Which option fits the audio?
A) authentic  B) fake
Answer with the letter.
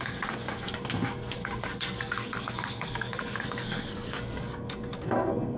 B